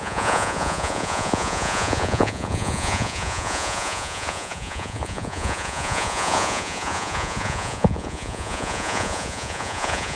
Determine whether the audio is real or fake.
fake